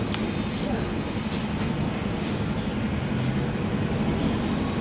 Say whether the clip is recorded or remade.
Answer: recorded